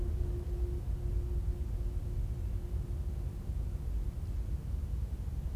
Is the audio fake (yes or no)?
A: no